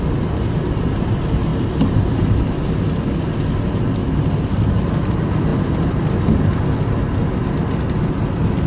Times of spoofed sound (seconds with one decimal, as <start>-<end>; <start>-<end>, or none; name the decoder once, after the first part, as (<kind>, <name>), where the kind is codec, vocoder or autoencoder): none